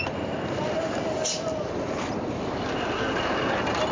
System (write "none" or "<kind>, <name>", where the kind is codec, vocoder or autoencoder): none